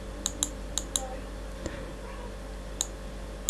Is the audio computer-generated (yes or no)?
no